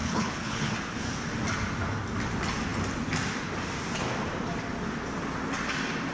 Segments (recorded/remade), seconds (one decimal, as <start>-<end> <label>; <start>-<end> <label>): 0.0-0.7 remade; 0.7-6.1 recorded